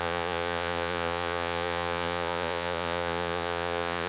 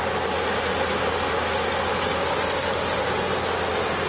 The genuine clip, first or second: second